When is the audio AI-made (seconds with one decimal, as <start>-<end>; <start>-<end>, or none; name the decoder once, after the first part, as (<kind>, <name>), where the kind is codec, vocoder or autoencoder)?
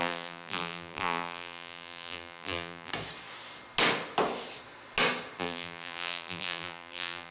0.0-2.9 (vocoder, BigVGAN v2); 5.4-7.3